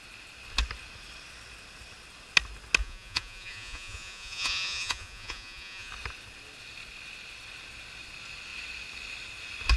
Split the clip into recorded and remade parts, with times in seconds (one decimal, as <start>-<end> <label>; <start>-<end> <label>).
0.0-2.8 recorded; 2.8-5.9 remade; 5.9-9.8 recorded